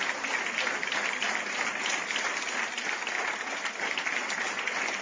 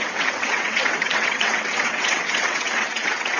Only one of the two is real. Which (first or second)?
first